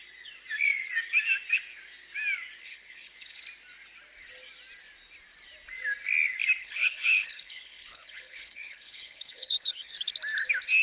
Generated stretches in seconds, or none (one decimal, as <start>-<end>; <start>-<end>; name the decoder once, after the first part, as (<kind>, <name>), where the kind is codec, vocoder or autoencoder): 2.6-3.4 (codec, HILCodec); 6.6-9.9